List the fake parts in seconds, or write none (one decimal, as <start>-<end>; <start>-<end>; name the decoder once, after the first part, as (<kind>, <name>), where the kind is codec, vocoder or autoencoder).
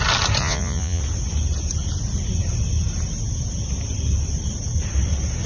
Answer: 0.4-1.0 (vocoder, Vocos)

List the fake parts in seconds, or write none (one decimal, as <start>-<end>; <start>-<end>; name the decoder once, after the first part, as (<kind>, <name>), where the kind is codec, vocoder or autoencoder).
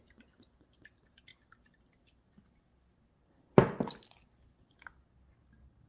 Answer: none